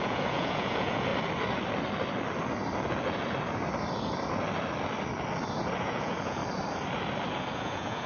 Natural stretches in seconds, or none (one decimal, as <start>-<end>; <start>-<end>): 1.1-5.8; 6.4-7.4